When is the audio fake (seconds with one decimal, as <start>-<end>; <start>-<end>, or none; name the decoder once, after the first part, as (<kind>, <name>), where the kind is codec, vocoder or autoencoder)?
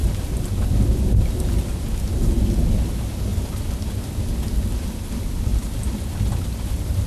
none